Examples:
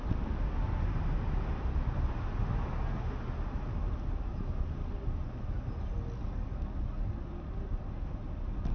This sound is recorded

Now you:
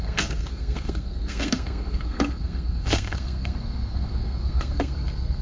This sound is remade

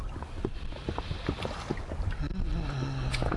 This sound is recorded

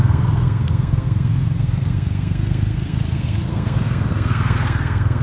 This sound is remade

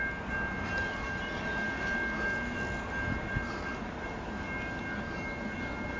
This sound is recorded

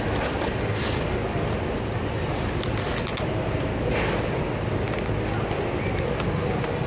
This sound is recorded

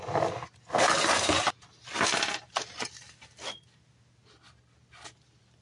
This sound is recorded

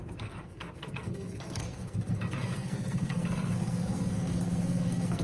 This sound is remade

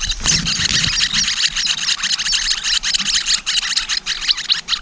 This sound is recorded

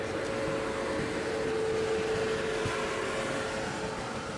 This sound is recorded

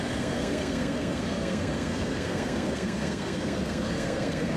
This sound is remade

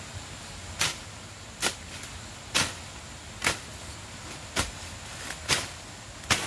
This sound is recorded